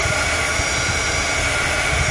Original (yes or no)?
yes